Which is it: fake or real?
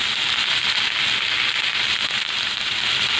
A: real